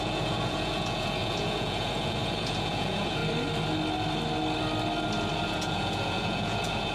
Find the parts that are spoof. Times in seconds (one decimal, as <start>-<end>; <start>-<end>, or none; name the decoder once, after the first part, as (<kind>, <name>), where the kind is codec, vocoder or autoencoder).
0.0-3.2 (vocoder, Vocos); 5.5-6.9